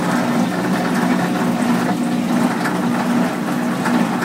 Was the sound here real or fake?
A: real